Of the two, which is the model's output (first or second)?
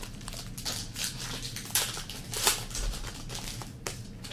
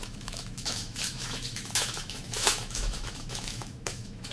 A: second